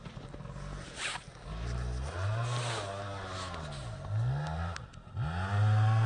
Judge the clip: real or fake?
real